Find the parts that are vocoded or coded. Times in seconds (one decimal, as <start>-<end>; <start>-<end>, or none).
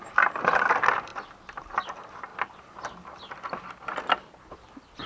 none